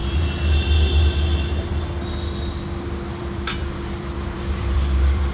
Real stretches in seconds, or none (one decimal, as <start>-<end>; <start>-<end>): 0.0-3.1